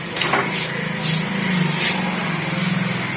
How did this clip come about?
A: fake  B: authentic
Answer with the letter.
B